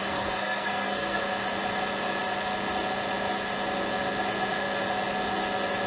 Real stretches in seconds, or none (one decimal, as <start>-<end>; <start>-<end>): 1.2-5.9